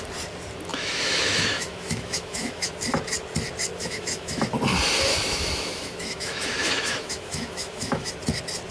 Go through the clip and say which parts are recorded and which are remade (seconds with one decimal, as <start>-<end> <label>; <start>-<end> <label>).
0.0-0.7 recorded; 0.7-2.7 remade; 2.7-3.8 recorded; 3.8-4.5 remade; 4.5-5.1 recorded; 5.1-8.1 remade; 8.1-8.7 recorded